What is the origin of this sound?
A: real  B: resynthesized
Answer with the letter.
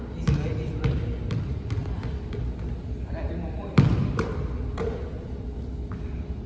A